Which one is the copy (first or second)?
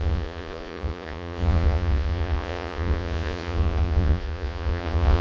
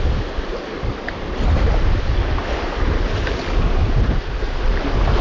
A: first